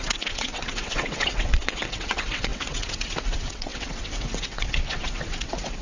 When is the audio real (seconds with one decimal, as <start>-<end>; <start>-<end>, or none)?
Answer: none